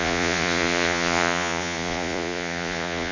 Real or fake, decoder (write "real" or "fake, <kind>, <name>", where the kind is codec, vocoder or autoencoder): fake, vocoder, Vocos